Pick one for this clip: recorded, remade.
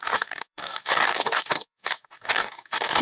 remade